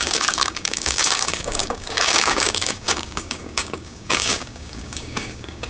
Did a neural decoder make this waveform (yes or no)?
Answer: yes